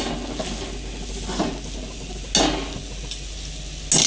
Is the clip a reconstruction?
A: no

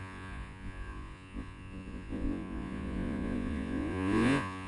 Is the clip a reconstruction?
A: yes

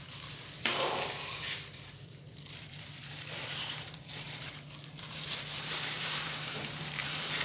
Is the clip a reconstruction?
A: yes